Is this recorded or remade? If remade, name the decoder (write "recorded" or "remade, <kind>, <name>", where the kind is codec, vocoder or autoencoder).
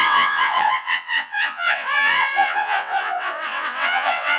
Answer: remade, vocoder, WaveNeXt